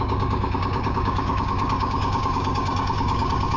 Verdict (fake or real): fake